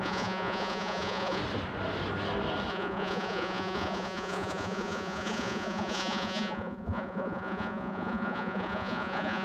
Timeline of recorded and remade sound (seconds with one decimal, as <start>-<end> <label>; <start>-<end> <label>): 0.0-1.4 remade; 1.4-2.7 recorded; 2.7-9.4 remade